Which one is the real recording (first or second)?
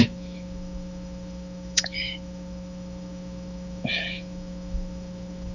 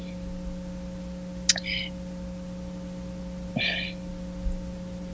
second